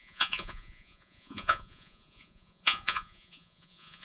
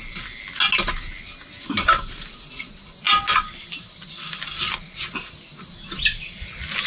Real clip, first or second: second